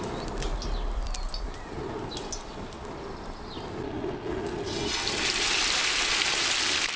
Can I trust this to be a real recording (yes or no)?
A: yes